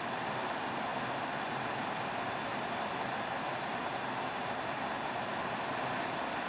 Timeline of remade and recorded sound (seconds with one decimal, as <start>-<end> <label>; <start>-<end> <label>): 0.0-6.5 recorded